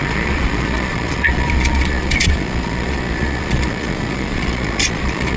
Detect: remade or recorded remade